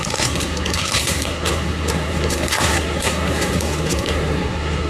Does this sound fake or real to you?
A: fake